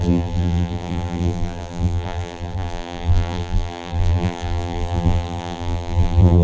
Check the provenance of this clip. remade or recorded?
remade